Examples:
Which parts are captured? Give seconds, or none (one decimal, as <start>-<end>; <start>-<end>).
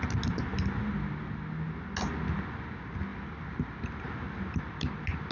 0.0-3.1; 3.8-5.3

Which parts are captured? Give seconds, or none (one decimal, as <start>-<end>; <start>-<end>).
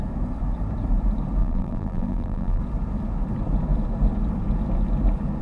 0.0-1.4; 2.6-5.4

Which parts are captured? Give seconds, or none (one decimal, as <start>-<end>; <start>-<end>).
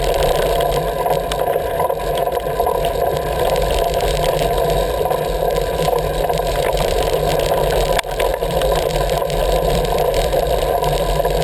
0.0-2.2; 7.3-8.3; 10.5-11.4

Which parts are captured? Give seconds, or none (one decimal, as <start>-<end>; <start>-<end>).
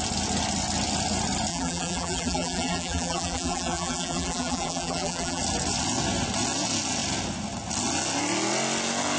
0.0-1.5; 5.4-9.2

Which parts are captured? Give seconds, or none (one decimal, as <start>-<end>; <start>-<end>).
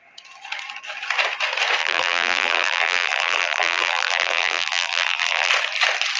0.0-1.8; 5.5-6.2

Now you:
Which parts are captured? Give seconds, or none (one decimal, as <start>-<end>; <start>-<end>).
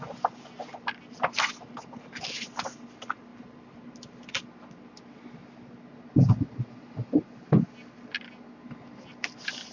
0.0-3.3; 4.4-9.7